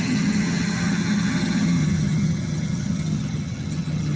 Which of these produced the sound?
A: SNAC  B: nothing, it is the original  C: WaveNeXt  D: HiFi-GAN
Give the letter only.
D